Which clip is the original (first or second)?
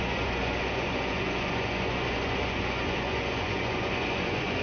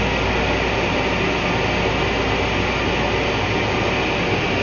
second